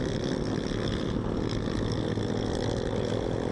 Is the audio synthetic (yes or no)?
no